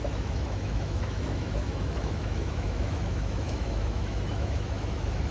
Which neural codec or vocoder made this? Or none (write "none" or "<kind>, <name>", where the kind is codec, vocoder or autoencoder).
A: autoencoder, DAC-VAE